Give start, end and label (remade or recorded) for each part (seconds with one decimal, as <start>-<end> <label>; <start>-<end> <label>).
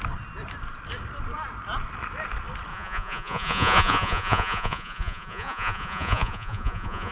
0.0-2.7 recorded; 2.7-7.1 remade